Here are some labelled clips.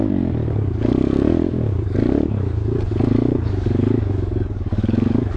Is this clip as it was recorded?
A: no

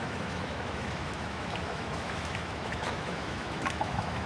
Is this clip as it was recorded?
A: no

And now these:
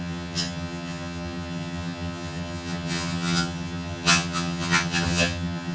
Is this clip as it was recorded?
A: no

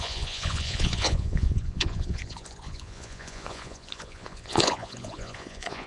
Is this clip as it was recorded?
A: no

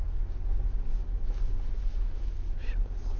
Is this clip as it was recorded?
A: yes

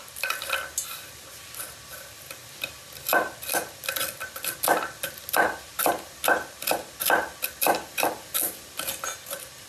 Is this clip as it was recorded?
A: yes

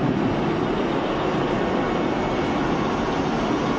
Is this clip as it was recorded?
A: yes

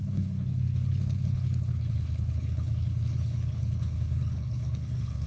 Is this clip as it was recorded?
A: no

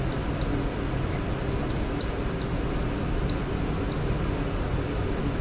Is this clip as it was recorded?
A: yes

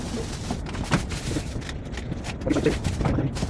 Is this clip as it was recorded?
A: yes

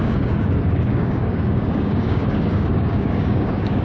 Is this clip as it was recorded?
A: no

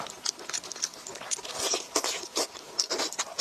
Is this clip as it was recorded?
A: yes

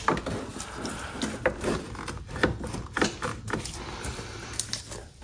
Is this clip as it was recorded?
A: yes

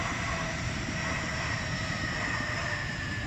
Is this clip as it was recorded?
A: yes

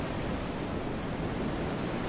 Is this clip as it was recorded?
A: yes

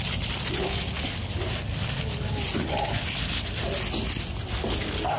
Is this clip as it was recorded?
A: yes